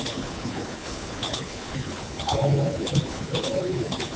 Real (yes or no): no